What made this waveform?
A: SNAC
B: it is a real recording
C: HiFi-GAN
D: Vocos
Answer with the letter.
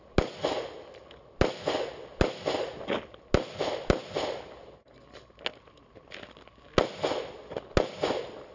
B